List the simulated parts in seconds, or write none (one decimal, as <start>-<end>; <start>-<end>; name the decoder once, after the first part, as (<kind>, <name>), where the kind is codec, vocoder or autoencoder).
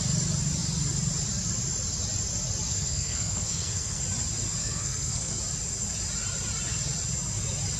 2.7-4.0 (codec, SNAC); 4.6-5.4